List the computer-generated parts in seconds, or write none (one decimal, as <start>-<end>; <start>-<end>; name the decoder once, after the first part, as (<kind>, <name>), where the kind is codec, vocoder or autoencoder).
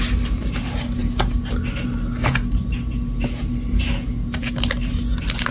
none